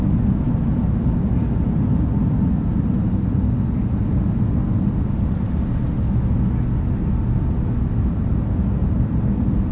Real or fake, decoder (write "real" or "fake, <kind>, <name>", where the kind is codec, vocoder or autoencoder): real